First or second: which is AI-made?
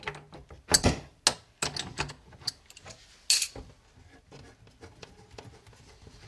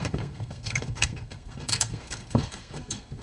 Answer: second